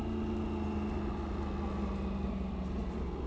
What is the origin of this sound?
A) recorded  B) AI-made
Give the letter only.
A